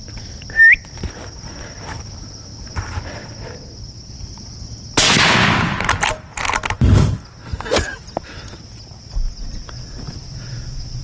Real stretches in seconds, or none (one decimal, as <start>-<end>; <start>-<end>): 0.0-11.0